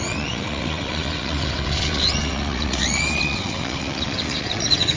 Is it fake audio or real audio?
fake